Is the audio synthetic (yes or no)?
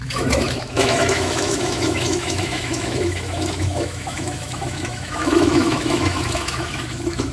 yes